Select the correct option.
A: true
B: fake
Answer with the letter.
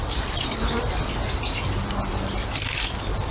A